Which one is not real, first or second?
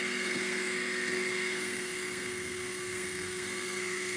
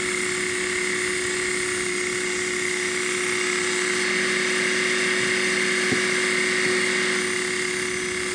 first